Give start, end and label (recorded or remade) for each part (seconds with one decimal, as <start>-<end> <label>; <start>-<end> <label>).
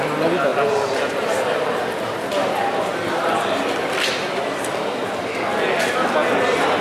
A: 0.0-6.8 recorded